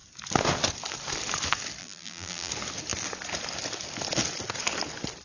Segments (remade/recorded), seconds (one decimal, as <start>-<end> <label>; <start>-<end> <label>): 0.0-1.8 recorded; 1.8-2.5 remade; 2.5-5.2 recorded